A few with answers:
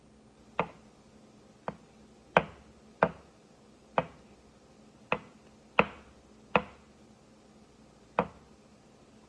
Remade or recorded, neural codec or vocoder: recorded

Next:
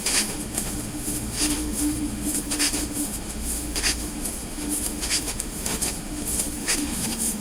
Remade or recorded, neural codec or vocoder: remade, autoencoder, DAC-VAE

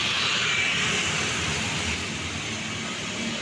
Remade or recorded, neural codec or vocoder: recorded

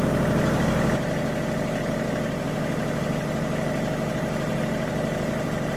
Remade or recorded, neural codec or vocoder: recorded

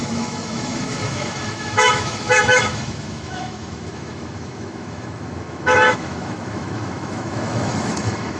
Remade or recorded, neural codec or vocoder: remade, autoencoder, DAC-VAE